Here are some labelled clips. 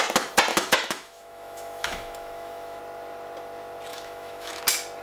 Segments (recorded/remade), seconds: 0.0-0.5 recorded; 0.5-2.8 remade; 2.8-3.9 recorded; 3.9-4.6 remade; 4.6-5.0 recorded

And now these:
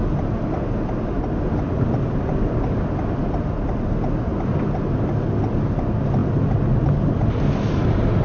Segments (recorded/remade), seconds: 0.0-8.2 recorded